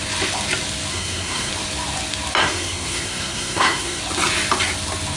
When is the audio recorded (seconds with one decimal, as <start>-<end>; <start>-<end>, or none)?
0.0-0.9; 1.5-2.4; 4.0-5.2